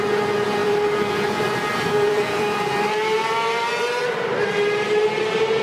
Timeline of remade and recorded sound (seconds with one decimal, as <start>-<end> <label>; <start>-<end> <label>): 0.0-0.6 recorded; 0.6-4.0 remade; 4.0-5.6 recorded